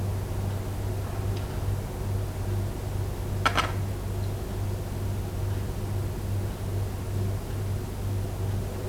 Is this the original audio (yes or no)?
yes